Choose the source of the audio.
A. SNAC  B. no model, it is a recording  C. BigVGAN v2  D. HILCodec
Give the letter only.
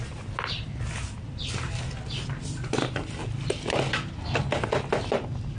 B